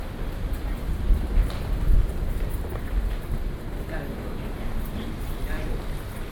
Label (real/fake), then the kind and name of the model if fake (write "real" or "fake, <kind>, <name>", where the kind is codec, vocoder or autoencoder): fake, vocoder, BigVGAN v2